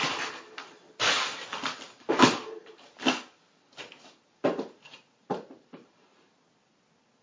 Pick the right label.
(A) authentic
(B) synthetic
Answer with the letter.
A